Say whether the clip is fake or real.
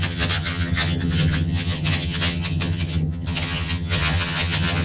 fake